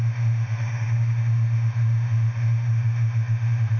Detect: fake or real fake